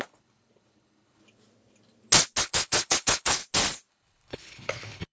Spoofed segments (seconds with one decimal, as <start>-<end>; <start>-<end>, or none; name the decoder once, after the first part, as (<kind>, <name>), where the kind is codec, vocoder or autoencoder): 0.0-1.2 (codec, HILCodec); 2.4-3.4; 3.9-5.1